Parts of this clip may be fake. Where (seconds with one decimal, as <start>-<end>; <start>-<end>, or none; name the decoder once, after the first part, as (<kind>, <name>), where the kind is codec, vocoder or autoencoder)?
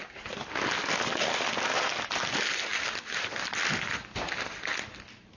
0.0-1.7 (vocoder, BigVGAN v2); 2.3-4.7